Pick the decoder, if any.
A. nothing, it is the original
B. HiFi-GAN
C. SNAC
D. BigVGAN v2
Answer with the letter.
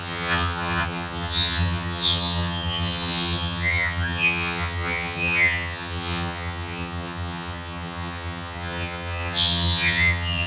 B